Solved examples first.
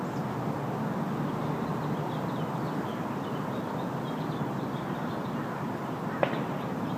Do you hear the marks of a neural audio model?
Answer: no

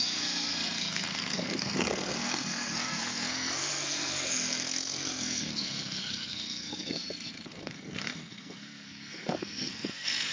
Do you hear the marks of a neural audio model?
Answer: yes